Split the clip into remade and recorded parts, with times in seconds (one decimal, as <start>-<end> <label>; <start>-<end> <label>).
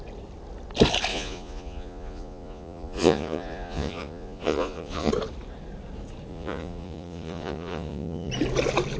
0.0-1.1 recorded; 1.1-5.1 remade; 5.1-6.3 recorded; 6.3-8.3 remade; 8.3-9.0 recorded